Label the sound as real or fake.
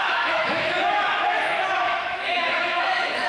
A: fake